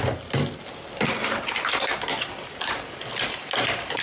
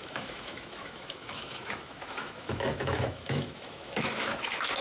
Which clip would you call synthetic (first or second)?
second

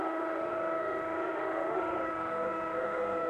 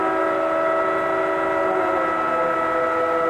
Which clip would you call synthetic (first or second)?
first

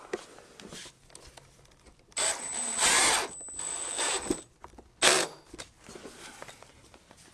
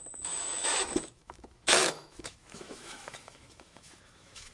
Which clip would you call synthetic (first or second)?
second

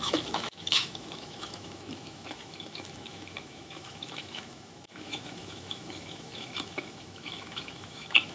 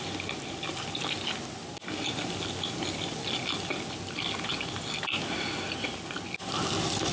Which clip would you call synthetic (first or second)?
first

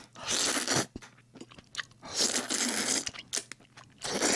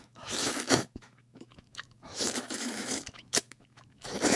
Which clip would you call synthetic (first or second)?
second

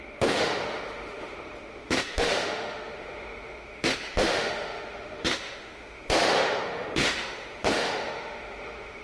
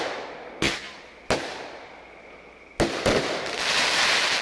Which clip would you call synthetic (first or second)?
first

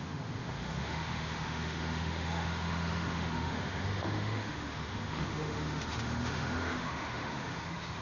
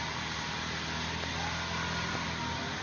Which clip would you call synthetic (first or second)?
first